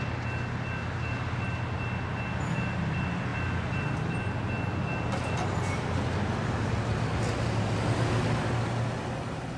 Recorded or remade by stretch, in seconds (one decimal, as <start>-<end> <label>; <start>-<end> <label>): 0.0-9.6 recorded